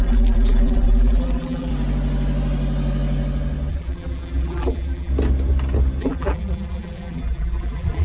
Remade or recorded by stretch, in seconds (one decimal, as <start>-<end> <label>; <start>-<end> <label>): 0.0-1.7 remade; 1.7-3.7 recorded; 3.7-5.1 remade; 5.1-6.0 recorded; 6.0-8.0 remade